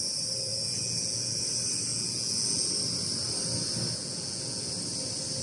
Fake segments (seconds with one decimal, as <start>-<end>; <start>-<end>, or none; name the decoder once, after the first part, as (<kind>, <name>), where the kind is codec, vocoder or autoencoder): 0.5-1.4 (vocoder, Vocos); 1.9-2.7; 4.0-4.7